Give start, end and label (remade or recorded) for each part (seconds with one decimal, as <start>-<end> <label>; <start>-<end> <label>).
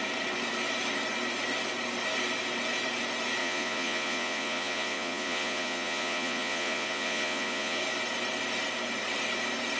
0.0-3.4 recorded; 3.4-7.8 remade; 7.8-9.8 recorded